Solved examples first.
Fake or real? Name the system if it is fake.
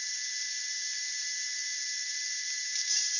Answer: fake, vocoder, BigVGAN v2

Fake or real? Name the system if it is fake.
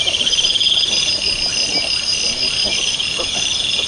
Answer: real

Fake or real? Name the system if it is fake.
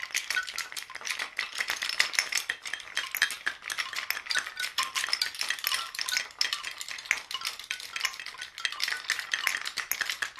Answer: real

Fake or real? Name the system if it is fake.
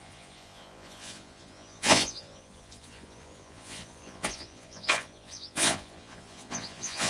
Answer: fake, vocoder, Vocos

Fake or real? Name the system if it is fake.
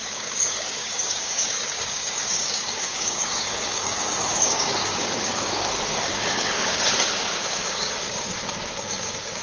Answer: fake, codec, DAC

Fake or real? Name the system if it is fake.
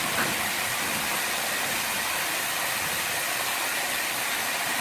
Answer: real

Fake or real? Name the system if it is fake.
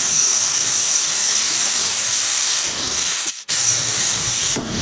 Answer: fake, codec, DAC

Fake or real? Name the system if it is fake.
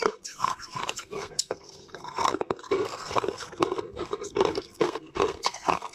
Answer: fake, codec, SNAC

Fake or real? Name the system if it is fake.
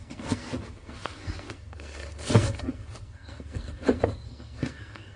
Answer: fake, codec, SNAC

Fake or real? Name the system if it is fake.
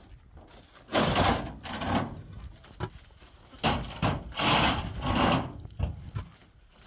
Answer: real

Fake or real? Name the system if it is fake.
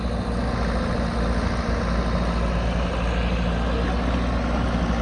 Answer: real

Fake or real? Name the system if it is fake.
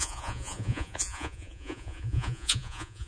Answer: fake, vocoder, Vocos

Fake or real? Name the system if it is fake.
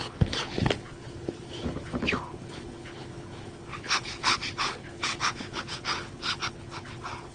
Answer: fake, codec, HILCodec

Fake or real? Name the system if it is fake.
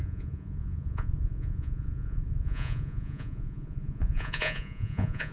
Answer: fake, vocoder, Vocos